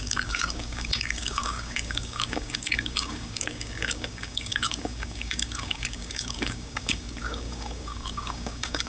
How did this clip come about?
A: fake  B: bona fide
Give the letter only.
A